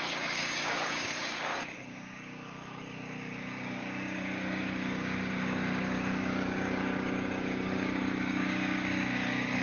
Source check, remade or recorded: remade